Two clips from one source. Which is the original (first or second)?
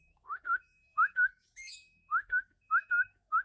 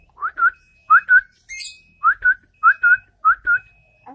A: second